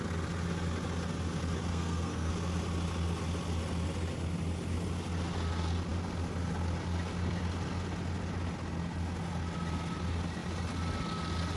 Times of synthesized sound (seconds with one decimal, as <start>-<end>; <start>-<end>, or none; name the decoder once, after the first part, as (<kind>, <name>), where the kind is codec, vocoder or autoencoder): 1.7-2.3 (codec, SNAC)